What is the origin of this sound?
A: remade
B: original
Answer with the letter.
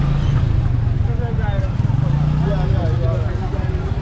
B